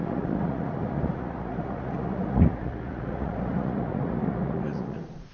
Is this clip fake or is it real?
fake